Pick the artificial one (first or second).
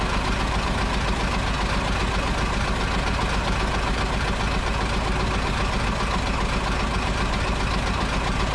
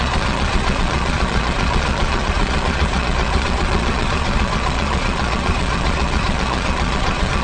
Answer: second